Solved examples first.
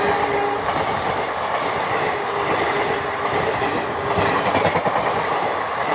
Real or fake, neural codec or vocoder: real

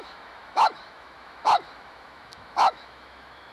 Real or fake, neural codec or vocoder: fake, autoencoder, DAC-VAE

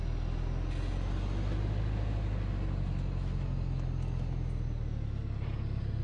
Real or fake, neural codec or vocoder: real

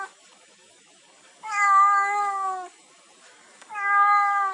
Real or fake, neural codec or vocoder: fake, codec, DAC